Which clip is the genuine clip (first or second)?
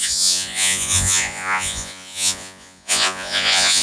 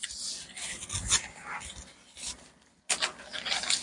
second